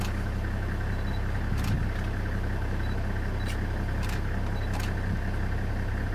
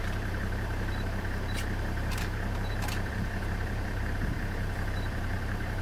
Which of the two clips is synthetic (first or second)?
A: second